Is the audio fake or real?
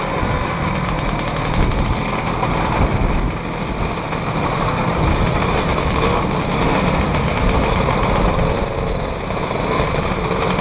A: real